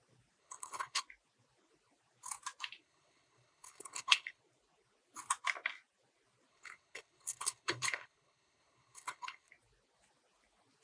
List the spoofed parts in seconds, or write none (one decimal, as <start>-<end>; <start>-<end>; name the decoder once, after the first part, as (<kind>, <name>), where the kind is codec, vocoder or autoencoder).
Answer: 0.4-1.0 (codec, HILCodec); 2.8-4.4; 6.5-9.5